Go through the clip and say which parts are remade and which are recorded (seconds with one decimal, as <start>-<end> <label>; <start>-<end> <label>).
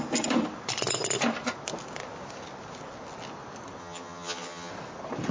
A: 0.0-3.8 recorded; 3.8-4.7 remade; 4.7-5.3 recorded